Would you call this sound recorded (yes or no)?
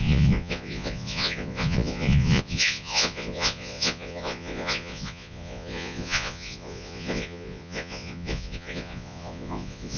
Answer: no